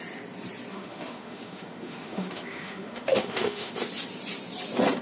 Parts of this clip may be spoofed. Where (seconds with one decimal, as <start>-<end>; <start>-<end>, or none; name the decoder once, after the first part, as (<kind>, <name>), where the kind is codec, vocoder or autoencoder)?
0.7-3.7 (autoencoder, DAC-VAE)